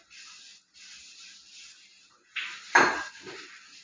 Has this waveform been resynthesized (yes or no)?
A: no